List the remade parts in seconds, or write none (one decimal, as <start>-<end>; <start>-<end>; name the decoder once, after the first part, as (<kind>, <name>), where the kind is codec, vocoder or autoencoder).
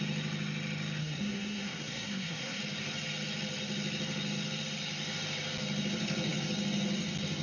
1.0-2.6 (codec, SNAC)